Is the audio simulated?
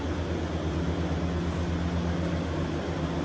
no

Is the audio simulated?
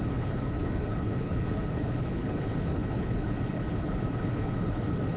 yes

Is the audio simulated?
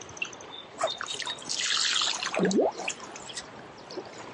no